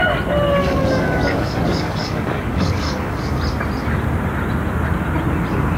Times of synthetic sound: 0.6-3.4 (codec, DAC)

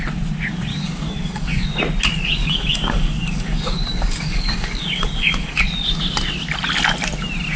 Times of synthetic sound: 0.7-1.8 (codec, DAC); 2.4-5.6

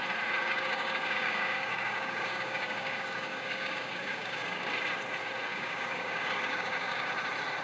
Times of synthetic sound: 0.4-4.7 (codec, DAC); 5.5-7.1

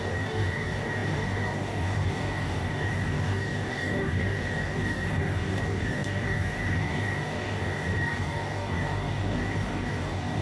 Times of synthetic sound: 0.0-10.4 (codec, DAC)

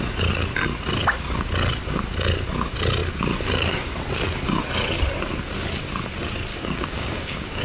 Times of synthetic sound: 6.5-7.6 (codec, DAC)

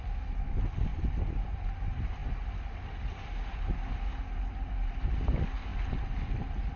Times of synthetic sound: none

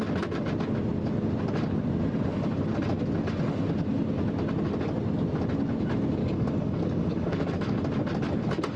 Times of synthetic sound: 6.2-7.8 (codec, DAC)